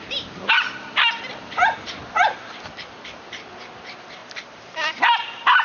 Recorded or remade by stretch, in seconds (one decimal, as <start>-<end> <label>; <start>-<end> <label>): 0.0-4.2 recorded; 4.2-5.0 remade; 5.0-5.6 recorded